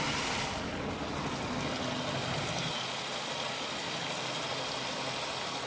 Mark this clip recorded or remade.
recorded